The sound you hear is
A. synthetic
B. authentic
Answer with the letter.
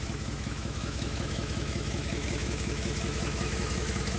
A